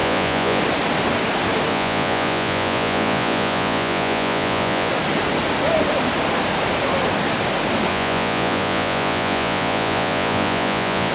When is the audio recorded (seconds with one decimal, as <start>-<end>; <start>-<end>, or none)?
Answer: 0.6-1.7; 4.9-7.9